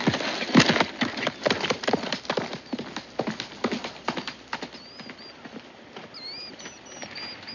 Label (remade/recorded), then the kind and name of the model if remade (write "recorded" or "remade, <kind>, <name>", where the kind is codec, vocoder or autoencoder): recorded